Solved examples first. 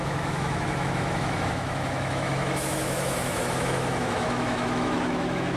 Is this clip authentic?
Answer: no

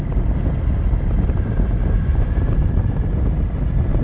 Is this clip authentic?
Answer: yes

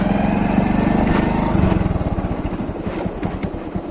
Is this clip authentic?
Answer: yes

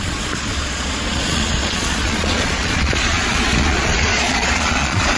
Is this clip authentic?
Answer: no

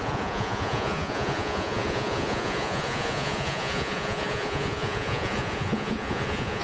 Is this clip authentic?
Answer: no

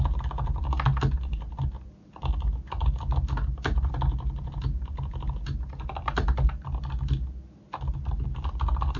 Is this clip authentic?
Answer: yes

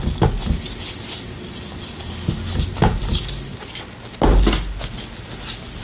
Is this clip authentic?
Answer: yes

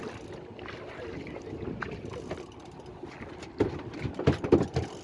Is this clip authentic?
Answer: yes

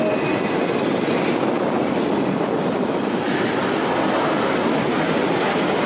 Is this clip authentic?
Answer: yes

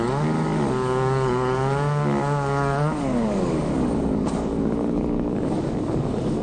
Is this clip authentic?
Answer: no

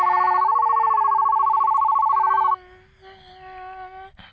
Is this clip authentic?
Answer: yes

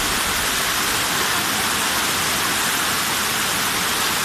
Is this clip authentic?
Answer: yes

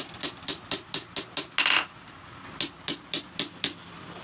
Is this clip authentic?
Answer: yes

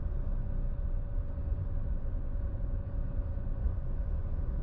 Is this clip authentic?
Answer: no